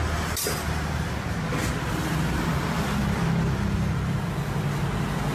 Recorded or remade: recorded